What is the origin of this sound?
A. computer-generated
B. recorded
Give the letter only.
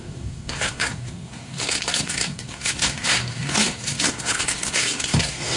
A